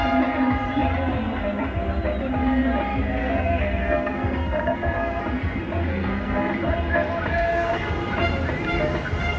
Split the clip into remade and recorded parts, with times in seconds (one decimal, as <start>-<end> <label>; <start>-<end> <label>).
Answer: 0.0-3.2 recorded; 3.2-5.2 remade; 5.2-5.9 recorded; 5.9-6.5 remade; 6.5-7.3 recorded; 7.3-7.9 remade; 7.9-9.4 recorded